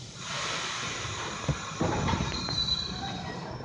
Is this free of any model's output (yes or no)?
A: no